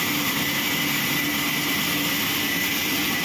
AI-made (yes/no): no